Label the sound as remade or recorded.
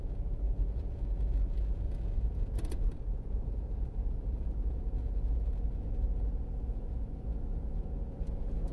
remade